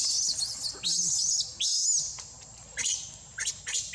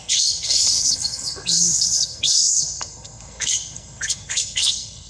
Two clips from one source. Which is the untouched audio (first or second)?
first